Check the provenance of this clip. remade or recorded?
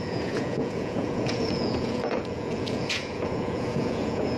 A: remade